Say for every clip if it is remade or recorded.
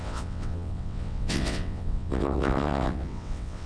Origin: remade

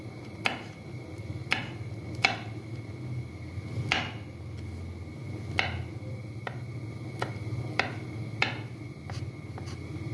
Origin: recorded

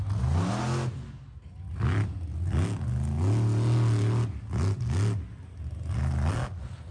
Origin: recorded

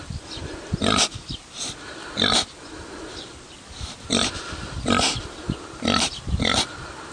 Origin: recorded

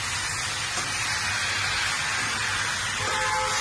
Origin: recorded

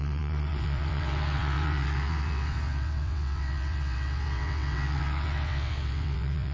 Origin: remade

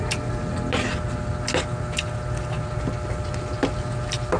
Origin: recorded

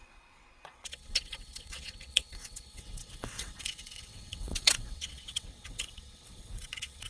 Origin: remade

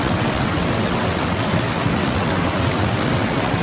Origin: remade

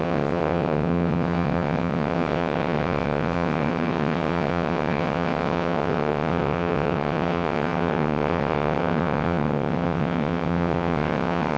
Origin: remade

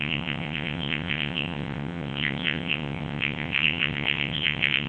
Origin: remade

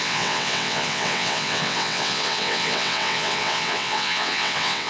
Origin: remade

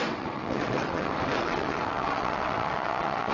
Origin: remade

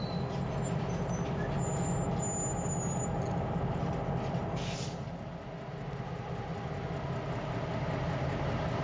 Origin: recorded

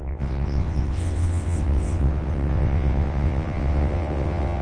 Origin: remade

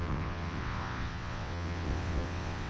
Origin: remade